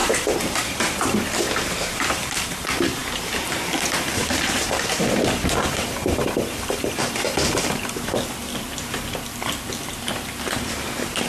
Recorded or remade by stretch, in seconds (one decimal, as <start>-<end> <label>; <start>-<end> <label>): 0.0-1.9 remade; 1.9-3.0 recorded; 3.0-3.7 remade; 3.7-4.2 recorded; 4.2-6.9 remade; 6.9-11.3 recorded